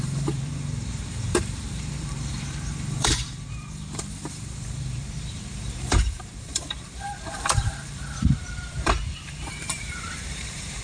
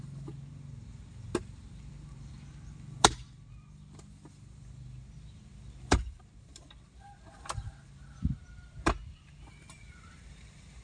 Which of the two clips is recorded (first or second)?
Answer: second